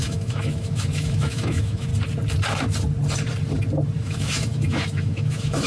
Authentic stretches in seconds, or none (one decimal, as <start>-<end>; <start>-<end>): 1.9-4.0